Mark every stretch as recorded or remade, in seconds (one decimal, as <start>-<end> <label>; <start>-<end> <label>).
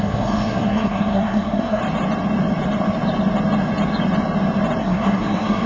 0.0-1.8 remade; 1.8-4.8 recorded; 4.8-5.7 remade